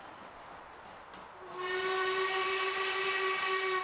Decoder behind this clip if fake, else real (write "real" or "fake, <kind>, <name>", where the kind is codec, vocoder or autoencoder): real